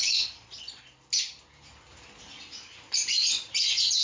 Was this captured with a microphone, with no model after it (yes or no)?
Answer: yes